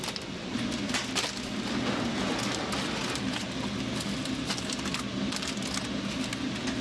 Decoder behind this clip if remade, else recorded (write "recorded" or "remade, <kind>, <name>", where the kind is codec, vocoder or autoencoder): recorded